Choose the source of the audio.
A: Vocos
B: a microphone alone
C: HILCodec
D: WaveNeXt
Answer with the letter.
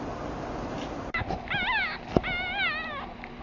B